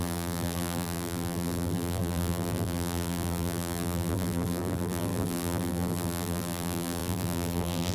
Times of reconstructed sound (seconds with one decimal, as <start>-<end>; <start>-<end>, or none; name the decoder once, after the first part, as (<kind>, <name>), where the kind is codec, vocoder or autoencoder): 0.0-7.9 (vocoder, BigVGAN v2)